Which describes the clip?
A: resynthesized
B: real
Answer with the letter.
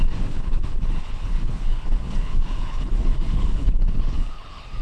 A